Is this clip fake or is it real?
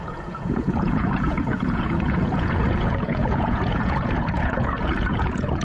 fake